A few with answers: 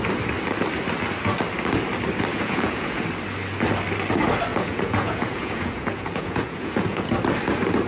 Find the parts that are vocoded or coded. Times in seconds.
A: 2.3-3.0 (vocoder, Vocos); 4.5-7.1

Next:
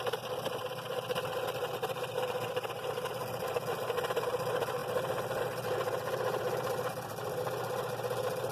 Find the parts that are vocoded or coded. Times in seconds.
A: none

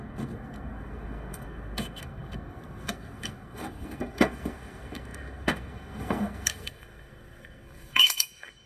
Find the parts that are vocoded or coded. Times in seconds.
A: 0.0-8.7 (codec, SNAC)

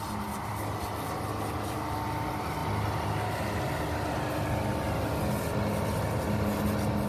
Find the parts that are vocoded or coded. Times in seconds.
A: none

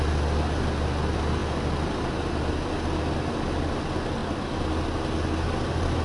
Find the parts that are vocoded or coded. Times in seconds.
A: 4.2-4.7 (vocoder, BigVGAN v2)

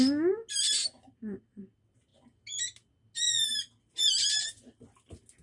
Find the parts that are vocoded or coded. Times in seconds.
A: none